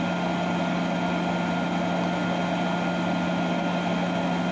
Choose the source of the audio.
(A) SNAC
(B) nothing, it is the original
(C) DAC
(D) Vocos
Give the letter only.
B